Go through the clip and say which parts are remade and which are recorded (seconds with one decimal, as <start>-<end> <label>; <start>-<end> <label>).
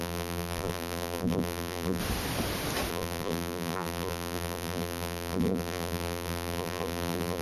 0.0-2.0 remade; 2.0-2.9 recorded; 2.9-7.4 remade